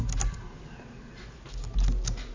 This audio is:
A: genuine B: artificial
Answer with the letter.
A